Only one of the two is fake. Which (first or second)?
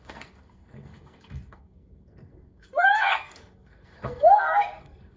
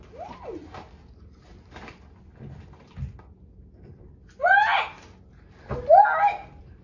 first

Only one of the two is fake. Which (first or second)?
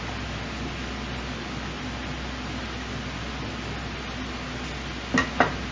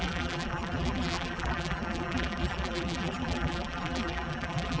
second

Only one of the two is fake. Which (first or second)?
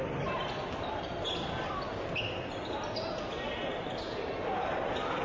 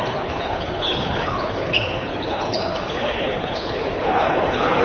second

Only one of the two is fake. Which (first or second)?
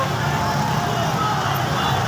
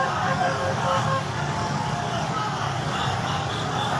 second